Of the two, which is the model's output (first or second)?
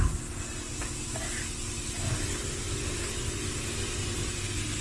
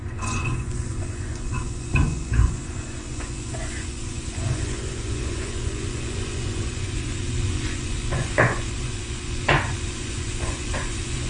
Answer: second